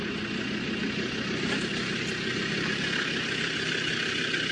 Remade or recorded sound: recorded